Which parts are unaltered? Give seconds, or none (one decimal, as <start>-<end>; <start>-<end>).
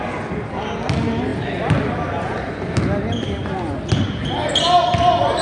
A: 0.0-5.4